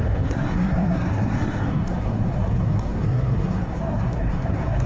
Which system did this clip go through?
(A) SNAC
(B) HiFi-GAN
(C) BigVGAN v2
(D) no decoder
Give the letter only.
A